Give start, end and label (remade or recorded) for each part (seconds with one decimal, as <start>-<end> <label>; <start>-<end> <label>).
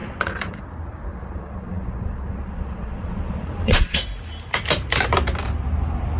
0.0-0.6 remade; 0.6-1.1 recorded; 1.1-4.0 remade; 4.0-6.2 recorded